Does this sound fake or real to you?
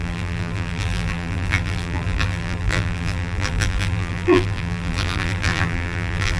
fake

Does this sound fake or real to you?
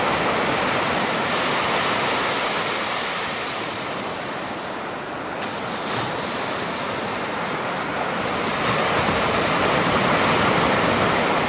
real